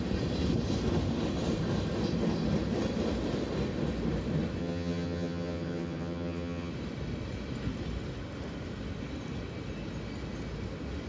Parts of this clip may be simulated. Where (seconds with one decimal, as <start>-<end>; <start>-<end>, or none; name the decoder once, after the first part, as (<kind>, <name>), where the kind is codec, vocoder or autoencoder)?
4.6-6.7 (vocoder, HiFi-GAN)